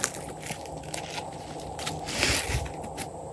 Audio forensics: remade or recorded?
recorded